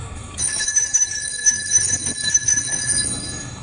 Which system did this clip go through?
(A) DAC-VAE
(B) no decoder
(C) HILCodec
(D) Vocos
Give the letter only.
A